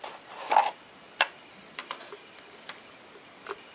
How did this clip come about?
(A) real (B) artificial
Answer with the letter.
A